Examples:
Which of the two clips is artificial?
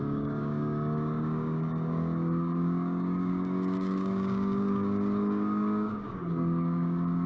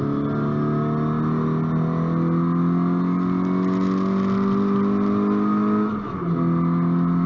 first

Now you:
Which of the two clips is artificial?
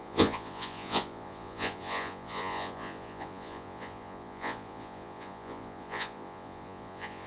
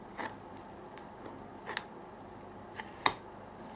first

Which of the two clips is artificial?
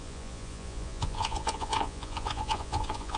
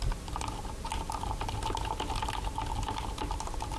first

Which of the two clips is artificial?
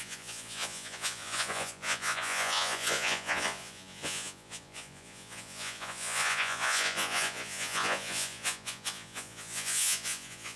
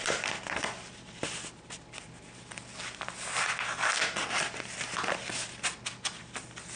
first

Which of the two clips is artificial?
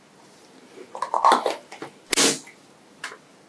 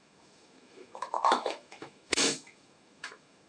second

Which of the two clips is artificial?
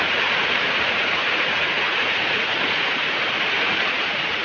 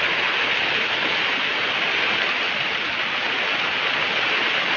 first